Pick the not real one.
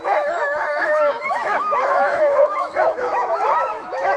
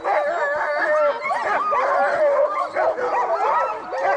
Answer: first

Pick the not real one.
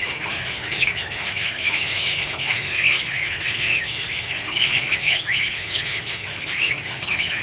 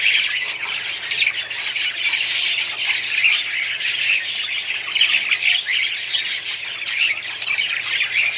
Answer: first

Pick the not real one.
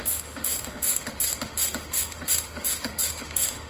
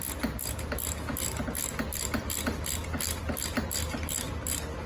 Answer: first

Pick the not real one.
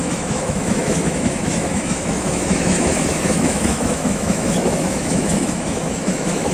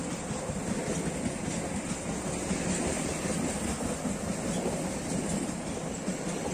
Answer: first